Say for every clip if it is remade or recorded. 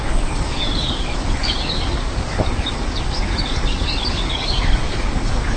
remade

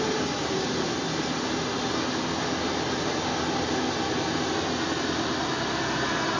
recorded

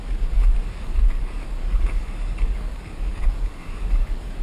remade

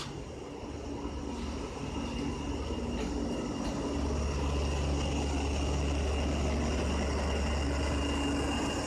recorded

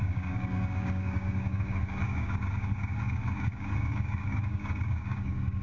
remade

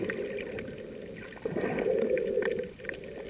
recorded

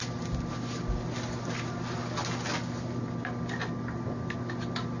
recorded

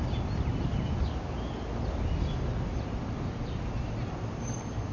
recorded